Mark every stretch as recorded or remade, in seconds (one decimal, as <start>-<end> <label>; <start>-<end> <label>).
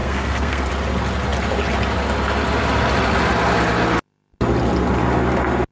0.0-0.7 remade; 0.7-5.7 recorded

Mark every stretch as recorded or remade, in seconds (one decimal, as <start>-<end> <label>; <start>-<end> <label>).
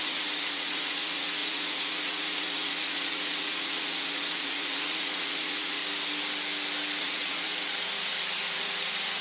0.0-5.8 remade; 5.8-7.0 recorded; 7.0-9.2 remade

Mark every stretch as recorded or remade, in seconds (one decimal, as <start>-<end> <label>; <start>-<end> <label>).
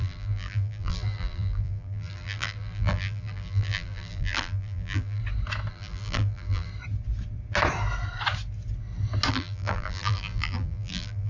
0.0-5.2 remade; 5.2-5.7 recorded; 5.7-6.7 remade; 6.7-9.3 recorded; 9.3-11.3 remade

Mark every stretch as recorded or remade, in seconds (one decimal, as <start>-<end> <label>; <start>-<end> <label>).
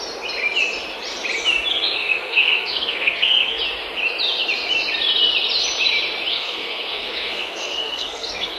0.0-1.7 recorded; 1.7-3.6 remade; 3.6-6.3 recorded; 6.3-8.6 remade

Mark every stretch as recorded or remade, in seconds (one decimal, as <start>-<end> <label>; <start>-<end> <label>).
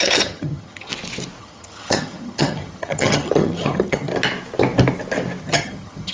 0.0-0.9 remade; 0.9-1.4 recorded; 1.4-4.1 remade; 4.1-5.4 recorded; 5.4-6.1 remade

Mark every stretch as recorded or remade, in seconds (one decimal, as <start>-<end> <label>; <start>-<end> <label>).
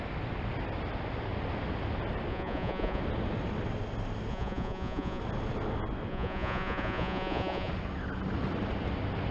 0.0-2.3 recorded; 2.3-3.0 remade; 3.0-4.3 recorded; 4.3-5.2 remade; 5.2-6.1 recorded; 6.1-7.7 remade; 7.7-9.3 recorded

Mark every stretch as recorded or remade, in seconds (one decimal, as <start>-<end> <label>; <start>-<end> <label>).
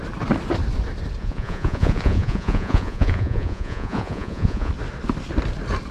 0.0-1.2 recorded; 1.2-4.7 remade; 4.7-5.9 recorded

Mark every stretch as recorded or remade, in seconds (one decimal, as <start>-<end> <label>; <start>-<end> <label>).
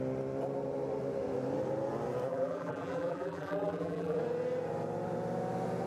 0.0-2.3 recorded; 2.3-4.2 remade; 4.2-5.9 recorded